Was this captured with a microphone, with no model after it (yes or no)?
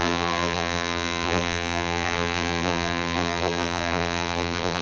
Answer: no